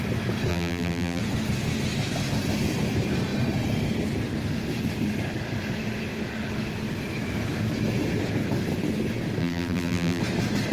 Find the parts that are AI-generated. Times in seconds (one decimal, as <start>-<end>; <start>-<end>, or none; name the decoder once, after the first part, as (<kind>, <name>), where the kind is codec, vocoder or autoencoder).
0.5-1.2 (vocoder, BigVGAN v2); 9.4-10.2